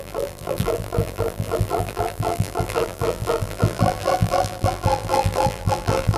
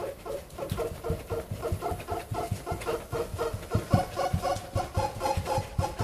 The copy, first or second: first